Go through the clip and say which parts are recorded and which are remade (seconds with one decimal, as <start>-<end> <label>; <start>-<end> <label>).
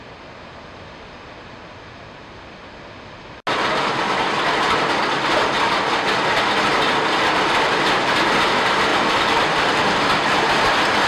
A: 0.0-8.9 recorded; 8.9-9.7 remade; 9.7-11.1 recorded